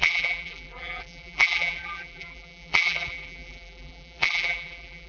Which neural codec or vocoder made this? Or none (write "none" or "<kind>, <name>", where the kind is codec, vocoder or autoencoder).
vocoder, BigVGAN v2